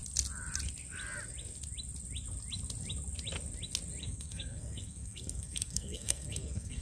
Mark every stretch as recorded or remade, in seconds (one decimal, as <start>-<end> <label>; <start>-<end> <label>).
0.0-4.0 recorded; 4.0-6.8 remade